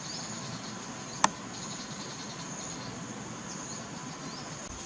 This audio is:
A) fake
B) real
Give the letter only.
B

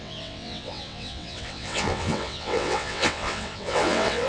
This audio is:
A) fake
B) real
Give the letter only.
A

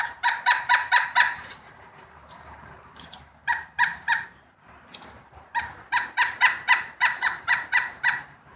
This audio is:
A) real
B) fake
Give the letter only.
B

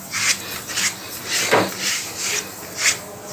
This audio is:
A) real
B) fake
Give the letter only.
A